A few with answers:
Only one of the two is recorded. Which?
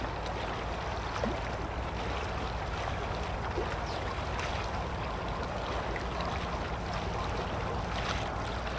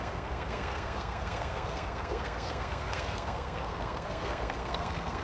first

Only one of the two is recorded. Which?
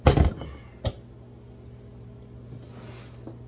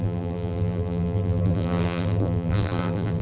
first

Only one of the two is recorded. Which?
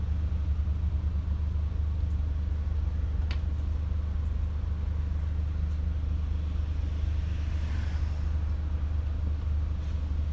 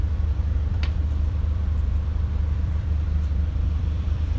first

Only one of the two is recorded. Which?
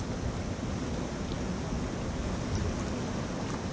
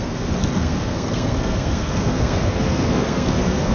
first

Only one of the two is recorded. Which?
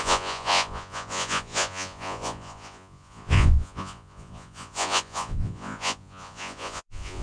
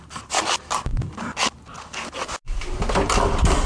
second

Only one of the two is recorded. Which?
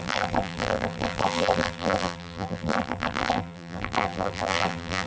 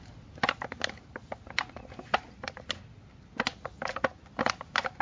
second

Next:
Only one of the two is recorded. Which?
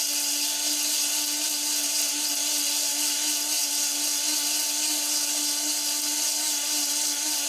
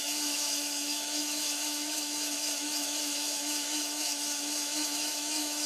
first